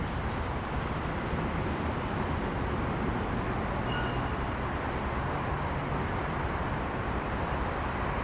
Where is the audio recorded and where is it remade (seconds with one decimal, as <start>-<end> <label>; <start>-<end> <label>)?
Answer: 0.0-3.1 remade; 3.1-6.2 recorded; 6.2-8.2 remade